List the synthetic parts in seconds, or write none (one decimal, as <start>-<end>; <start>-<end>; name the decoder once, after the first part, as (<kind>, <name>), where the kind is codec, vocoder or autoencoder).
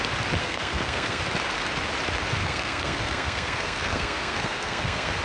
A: 0.4-1.2 (codec, SNAC); 2.4-5.2